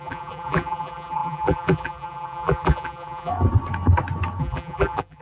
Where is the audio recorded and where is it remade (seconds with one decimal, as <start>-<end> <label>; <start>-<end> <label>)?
0.0-3.3 remade; 3.3-4.4 recorded; 4.4-5.2 remade